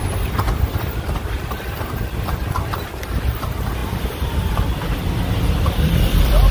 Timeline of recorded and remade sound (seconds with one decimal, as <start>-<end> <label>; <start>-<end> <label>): 0.0-6.5 remade